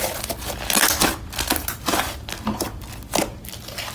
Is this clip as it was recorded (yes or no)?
yes